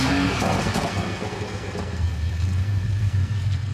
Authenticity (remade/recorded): remade